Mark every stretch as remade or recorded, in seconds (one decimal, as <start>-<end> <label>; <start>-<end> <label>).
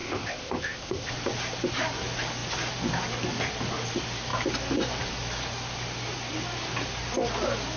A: 0.0-1.1 remade; 1.1-7.8 recorded